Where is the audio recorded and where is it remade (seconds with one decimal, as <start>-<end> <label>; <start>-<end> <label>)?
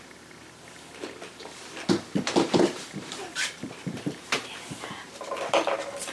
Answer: 0.0-2.1 recorded; 2.1-5.4 remade; 5.4-6.1 recorded